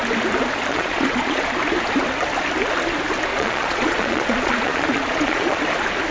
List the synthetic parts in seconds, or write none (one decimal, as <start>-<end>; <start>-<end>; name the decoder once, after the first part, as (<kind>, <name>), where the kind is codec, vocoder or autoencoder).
0.7-1.4 (vocoder, Vocos); 3.3-5.6